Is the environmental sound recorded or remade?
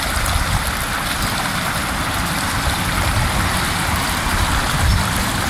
recorded